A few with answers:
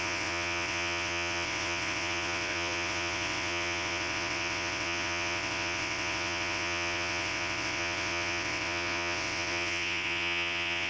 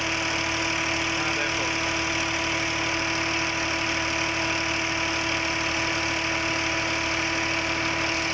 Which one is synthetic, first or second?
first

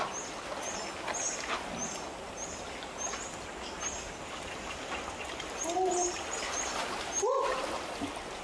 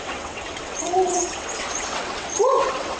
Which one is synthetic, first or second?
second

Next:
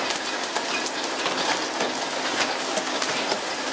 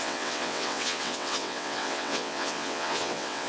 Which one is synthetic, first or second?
second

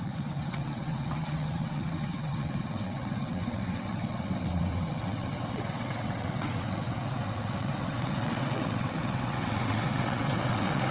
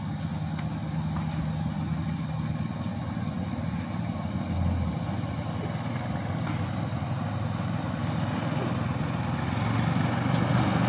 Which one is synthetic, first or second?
first